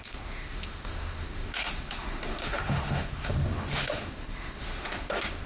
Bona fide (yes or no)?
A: no